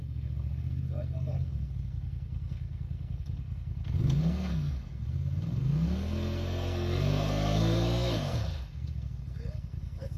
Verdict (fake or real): fake